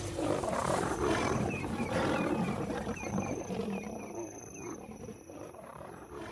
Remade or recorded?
remade